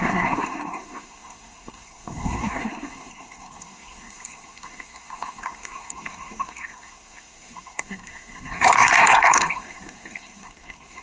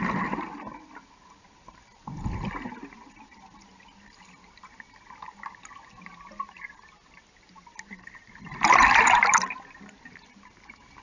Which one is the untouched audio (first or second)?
second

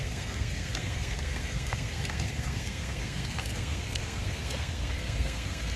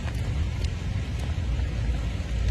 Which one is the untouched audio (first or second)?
second